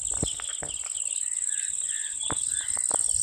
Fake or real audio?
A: real